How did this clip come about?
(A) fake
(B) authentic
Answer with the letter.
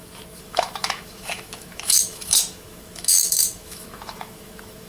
A